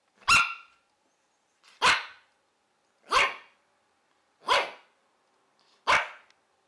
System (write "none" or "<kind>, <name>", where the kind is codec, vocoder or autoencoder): none